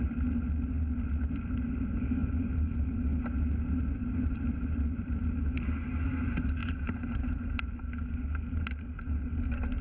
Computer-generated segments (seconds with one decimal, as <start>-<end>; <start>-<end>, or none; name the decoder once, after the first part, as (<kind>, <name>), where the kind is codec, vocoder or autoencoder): 2.2-3.0 (vocoder, BigVGAN v2); 4.0-5.0; 6.6-7.8